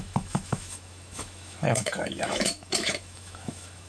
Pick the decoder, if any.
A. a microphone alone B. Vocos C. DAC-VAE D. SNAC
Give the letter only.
C